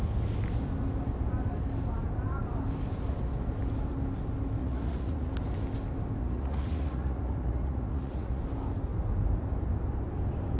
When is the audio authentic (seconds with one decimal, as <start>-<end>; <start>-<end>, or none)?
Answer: 0.0-4.6; 5.3-6.2; 8.4-10.6